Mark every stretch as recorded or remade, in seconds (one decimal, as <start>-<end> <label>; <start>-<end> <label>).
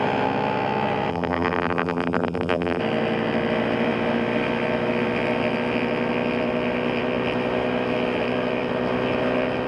0.0-1.1 recorded; 1.1-2.8 remade; 2.8-9.7 recorded